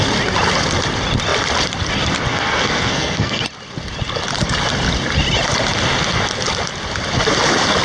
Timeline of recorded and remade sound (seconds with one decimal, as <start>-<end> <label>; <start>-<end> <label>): 0.0-2.3 recorded; 2.3-3.4 remade; 3.4-7.8 recorded